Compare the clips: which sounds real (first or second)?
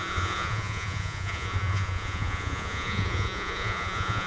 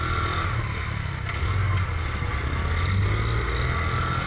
second